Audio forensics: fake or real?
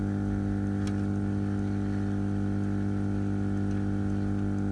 real